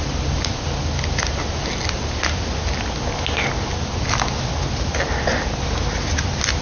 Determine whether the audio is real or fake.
real